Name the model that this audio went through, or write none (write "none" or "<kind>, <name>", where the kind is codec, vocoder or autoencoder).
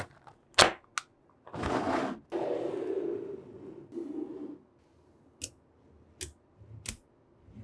none